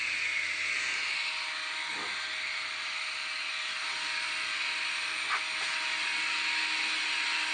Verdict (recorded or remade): recorded